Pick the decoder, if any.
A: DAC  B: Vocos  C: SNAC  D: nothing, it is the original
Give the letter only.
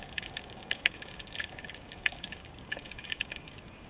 A